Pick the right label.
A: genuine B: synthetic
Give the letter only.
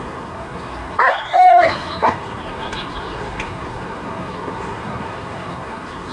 B